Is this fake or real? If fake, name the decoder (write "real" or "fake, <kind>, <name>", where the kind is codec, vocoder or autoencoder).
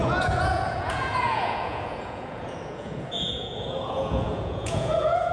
fake, vocoder, Vocos